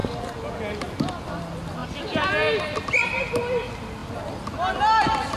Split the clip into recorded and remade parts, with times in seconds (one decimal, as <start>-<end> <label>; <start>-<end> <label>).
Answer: 0.0-5.4 recorded